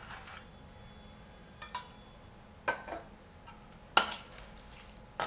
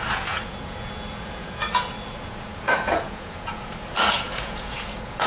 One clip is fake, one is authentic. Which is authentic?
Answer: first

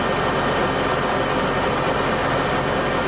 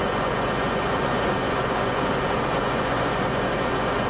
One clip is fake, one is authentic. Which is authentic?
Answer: first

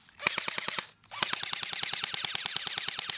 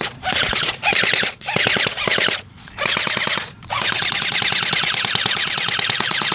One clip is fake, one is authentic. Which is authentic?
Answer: first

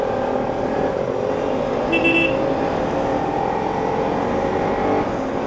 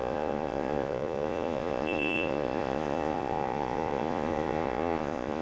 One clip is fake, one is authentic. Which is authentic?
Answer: first